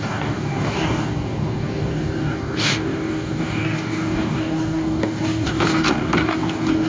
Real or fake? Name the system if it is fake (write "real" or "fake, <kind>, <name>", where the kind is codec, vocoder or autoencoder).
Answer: fake, codec, DAC